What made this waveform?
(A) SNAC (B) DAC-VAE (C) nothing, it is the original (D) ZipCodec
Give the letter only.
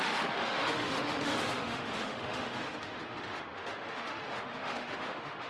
B